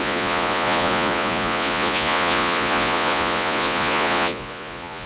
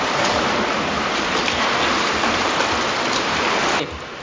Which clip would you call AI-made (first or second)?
first